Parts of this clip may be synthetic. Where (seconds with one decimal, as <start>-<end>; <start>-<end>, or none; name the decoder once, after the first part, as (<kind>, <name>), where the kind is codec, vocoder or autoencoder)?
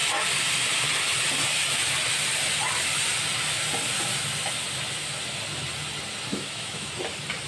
6.3-6.9 (autoencoder, DAC-VAE)